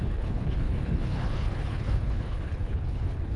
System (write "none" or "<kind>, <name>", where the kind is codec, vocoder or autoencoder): codec, HILCodec